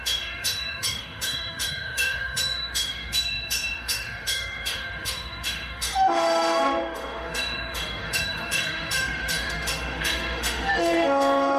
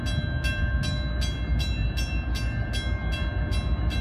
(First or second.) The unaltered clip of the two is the second